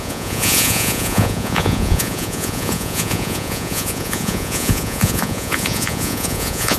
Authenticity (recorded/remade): remade